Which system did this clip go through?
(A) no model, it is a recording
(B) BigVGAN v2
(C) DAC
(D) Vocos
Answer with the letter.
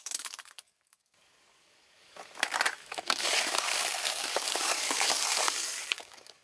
C